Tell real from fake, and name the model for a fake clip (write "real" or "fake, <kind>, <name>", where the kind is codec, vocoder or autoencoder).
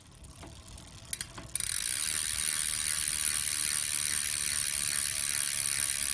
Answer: real